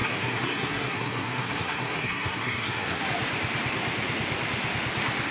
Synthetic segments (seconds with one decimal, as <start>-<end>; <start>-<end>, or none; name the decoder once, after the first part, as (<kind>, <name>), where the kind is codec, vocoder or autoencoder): 0.0-3.0 (codec, SNAC)

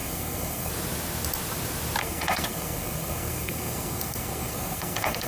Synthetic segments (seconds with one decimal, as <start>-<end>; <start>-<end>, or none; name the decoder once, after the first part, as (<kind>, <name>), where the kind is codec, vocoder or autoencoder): 0.0-0.7 (codec, SNAC); 2.0-5.3

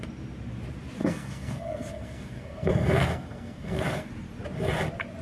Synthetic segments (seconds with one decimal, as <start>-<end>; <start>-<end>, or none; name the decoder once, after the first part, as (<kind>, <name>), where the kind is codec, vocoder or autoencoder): 1.0-4.1 (codec, SNAC)

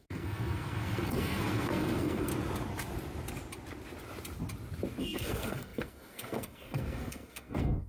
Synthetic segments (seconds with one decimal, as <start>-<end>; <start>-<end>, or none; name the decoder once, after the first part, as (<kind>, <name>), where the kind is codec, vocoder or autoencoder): 0.0-2.3 (codec, SNAC); 5.0-7.9

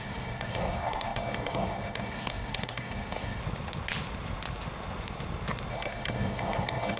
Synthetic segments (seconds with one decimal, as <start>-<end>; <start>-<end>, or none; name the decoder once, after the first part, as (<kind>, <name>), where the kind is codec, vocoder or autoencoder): 0.0-3.4 (codec, SNAC); 5.7-7.0

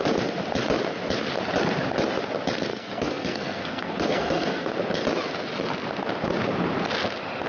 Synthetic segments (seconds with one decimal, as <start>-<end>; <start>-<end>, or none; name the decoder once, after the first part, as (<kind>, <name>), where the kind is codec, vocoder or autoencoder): 2.7-4.7 (codec, SNAC)